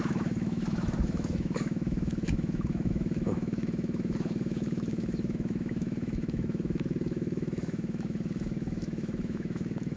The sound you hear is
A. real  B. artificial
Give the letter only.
B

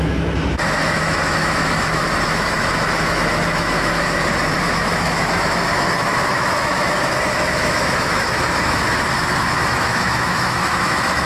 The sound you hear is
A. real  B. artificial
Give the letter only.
B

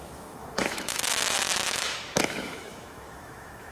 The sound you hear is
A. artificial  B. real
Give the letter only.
A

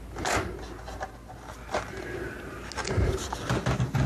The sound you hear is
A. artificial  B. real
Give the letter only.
B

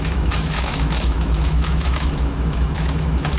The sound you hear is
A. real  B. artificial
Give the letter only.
B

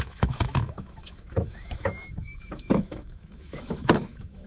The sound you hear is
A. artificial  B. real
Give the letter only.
A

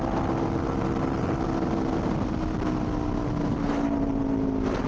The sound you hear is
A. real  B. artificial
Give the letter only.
A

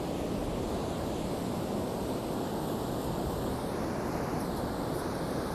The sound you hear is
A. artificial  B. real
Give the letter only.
B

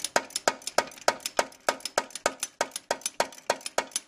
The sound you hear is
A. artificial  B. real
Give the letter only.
B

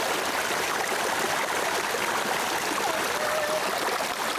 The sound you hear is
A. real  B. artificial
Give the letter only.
A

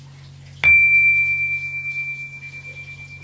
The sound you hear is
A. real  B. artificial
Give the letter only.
A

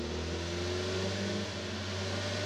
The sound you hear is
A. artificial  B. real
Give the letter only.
B